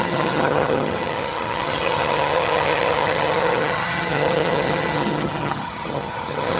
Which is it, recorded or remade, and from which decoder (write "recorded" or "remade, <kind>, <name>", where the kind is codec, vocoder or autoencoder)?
remade, vocoder, HiFi-GAN